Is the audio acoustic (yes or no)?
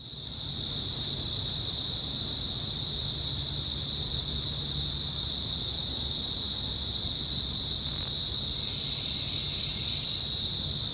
yes